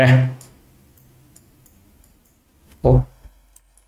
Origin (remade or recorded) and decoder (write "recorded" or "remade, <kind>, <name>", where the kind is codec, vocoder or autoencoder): recorded